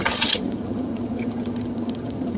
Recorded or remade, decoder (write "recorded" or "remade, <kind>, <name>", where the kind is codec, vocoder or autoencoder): remade, vocoder, HiFi-GAN